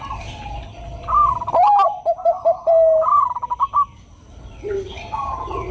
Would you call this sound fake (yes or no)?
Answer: no